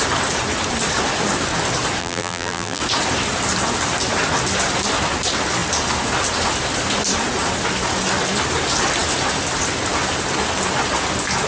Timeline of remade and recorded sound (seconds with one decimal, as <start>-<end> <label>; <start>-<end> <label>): 0.0-2.0 recorded; 2.0-2.8 remade; 2.8-11.5 recorded